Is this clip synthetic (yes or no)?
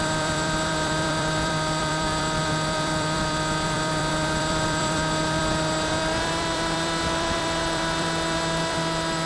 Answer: yes